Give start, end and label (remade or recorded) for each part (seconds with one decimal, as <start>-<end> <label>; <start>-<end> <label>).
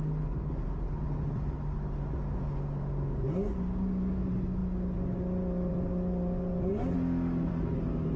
0.0-8.2 recorded